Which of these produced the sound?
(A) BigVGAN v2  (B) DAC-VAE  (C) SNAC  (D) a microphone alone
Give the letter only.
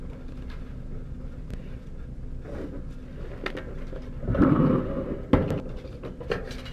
D